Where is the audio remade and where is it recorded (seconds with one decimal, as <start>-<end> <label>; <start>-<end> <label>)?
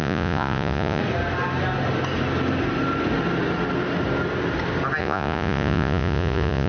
0.0-1.0 remade; 1.0-5.0 recorded; 5.0-6.7 remade